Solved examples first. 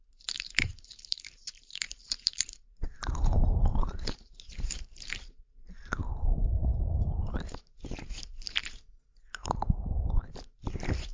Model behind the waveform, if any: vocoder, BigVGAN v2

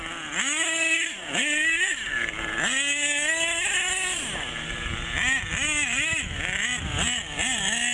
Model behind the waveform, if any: none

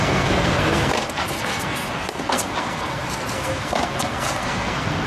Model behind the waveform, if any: codec, SNAC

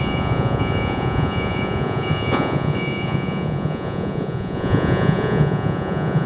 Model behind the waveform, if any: vocoder, Vocos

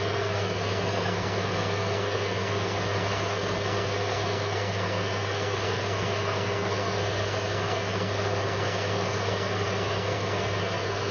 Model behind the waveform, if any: codec, SNAC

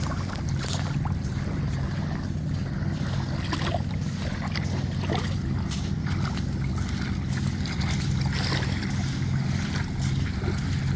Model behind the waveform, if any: none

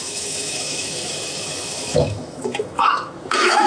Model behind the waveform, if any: autoencoder, DAC-VAE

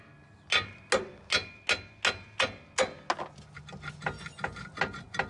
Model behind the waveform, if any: none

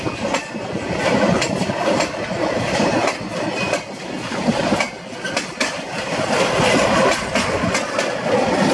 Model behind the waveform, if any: none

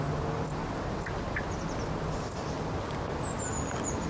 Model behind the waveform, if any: none